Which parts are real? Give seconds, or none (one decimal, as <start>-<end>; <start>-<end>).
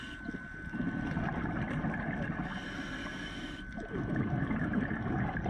0.0-5.5